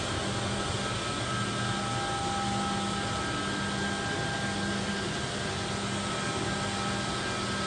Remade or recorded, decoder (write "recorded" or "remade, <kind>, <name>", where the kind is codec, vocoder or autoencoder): recorded